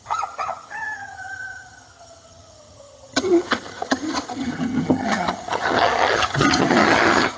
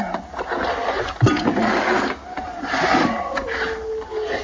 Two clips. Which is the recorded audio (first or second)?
second